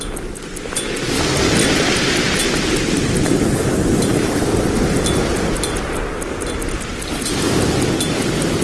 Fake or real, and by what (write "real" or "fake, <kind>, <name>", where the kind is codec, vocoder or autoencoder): real